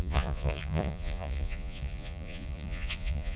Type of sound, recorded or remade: remade